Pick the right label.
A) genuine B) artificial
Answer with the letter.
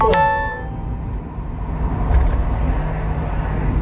A